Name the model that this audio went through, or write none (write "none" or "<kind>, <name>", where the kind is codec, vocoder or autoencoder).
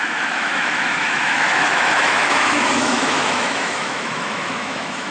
autoencoder, DAC-VAE